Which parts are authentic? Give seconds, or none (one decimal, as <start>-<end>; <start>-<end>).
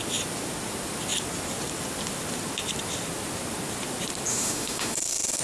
0.0-4.3